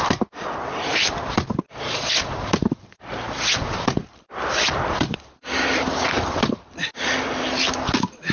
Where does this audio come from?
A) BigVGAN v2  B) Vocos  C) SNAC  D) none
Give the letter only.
D